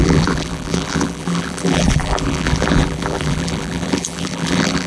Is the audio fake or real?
fake